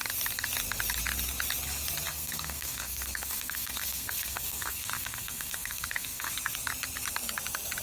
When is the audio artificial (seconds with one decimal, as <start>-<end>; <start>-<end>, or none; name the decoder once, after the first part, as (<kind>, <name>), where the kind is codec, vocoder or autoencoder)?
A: 2.1-6.3 (codec, SNAC)